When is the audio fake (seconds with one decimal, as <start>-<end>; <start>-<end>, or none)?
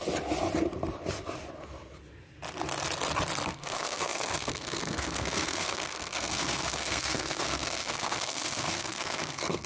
3.5-9.7